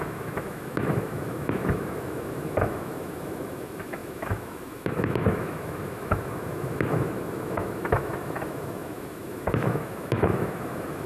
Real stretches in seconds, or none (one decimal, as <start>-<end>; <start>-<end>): none